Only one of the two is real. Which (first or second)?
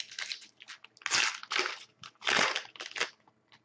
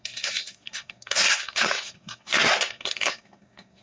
first